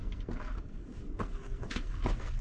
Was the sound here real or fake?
fake